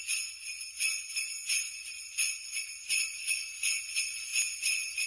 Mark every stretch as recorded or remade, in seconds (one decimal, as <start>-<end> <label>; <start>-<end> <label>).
0.0-5.1 recorded